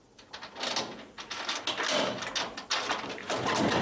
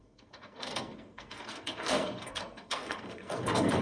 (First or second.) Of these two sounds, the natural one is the first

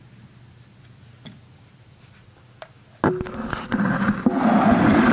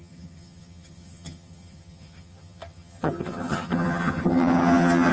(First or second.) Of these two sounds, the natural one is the first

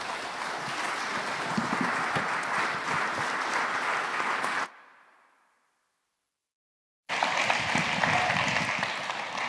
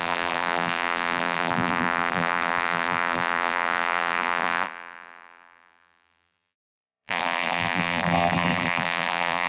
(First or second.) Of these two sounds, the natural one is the first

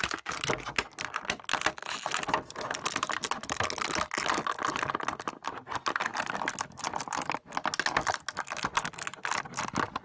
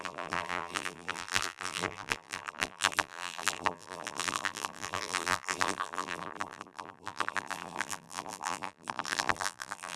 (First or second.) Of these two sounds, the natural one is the first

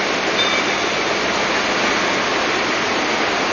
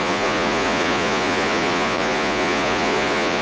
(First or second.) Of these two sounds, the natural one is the first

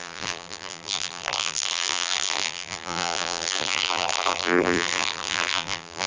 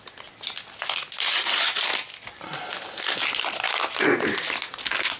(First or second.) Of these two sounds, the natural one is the second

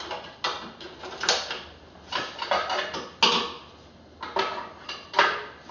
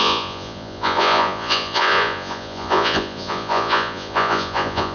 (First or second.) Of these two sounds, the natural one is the first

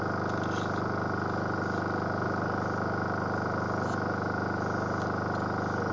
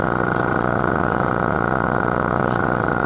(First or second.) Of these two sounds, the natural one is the first